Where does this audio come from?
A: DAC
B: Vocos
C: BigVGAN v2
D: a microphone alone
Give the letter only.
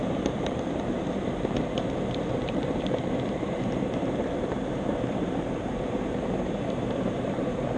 C